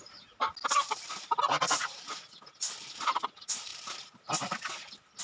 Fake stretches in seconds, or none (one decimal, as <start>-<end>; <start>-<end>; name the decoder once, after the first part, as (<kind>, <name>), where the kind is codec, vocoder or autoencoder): none